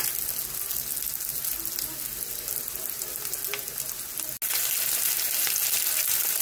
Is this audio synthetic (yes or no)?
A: no